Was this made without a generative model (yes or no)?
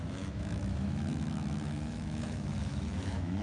no